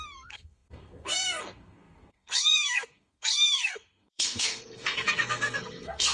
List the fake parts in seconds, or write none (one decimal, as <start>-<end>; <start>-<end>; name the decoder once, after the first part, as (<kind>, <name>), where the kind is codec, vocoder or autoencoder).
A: 0.0-6.1 (codec, SNAC)